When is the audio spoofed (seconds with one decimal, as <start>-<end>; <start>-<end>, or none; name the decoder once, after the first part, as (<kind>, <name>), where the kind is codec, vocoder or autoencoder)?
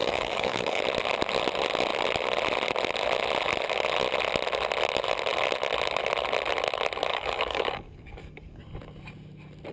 0.0-0.8 (codec, DAC); 7.1-8.6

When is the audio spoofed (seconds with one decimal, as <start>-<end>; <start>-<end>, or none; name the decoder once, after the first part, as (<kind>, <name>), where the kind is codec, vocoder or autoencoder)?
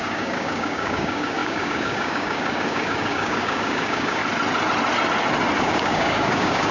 0.0-4.2 (codec, DAC); 5.6-6.7